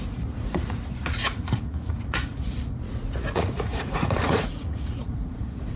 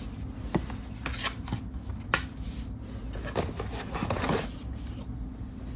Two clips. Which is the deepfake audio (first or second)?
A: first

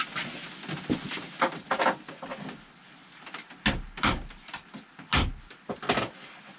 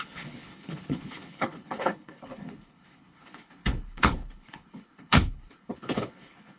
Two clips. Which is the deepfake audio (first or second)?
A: second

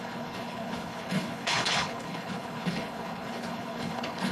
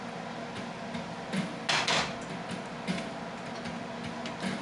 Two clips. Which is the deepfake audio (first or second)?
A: first